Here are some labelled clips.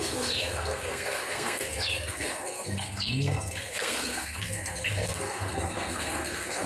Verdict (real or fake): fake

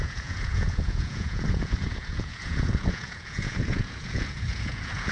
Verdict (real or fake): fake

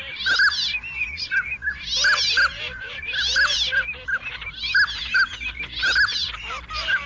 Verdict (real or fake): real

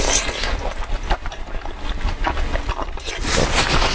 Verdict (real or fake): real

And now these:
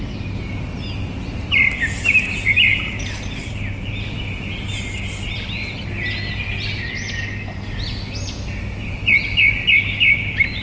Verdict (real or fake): real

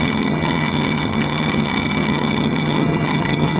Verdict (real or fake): fake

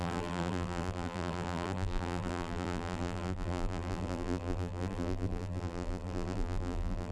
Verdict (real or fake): fake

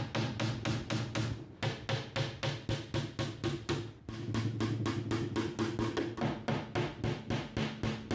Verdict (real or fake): real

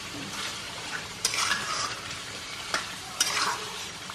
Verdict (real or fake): fake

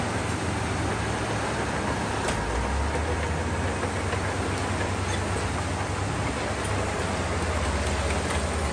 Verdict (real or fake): real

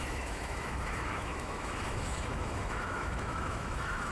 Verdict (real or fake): fake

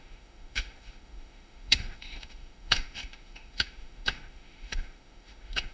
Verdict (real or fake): fake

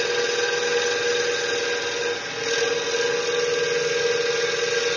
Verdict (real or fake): real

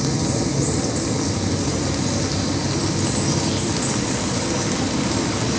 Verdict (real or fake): real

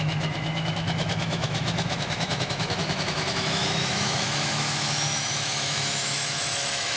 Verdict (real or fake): fake